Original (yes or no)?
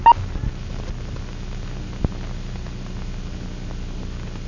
yes